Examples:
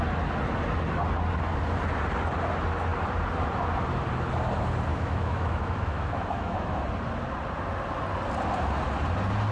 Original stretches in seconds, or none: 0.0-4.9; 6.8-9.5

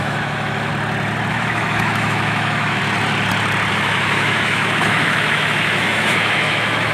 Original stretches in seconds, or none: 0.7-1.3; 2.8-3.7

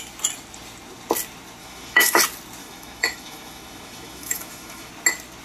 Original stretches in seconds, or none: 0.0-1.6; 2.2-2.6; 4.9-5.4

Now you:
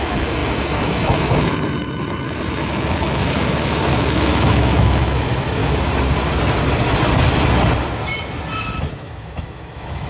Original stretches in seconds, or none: 5.6-8.9